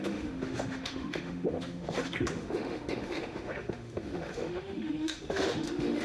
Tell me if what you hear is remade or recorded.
remade